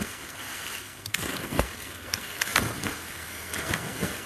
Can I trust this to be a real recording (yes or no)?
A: no